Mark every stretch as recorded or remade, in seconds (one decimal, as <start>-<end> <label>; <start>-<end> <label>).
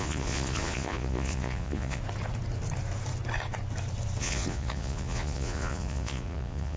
0.0-2.0 remade; 2.0-4.2 recorded; 4.2-6.8 remade